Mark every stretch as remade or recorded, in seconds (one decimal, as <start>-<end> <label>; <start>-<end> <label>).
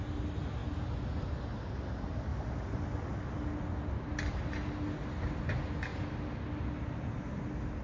0.0-7.8 recorded